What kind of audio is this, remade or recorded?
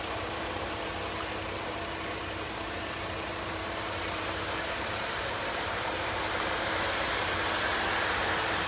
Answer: remade